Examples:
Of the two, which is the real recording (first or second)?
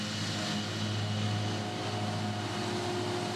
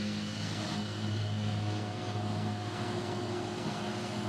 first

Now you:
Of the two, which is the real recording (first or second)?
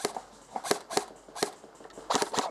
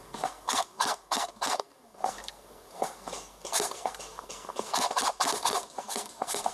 first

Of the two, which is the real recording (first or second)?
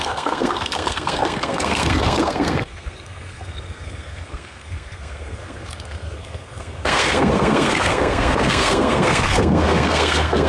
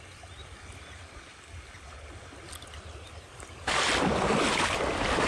second